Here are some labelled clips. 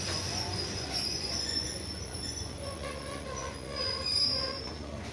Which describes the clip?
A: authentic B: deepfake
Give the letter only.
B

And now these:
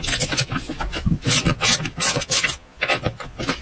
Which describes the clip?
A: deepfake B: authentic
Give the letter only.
A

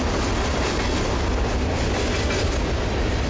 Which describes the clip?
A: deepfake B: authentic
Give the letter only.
B